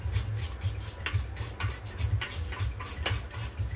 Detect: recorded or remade recorded